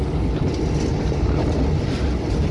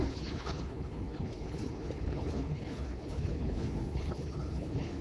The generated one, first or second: second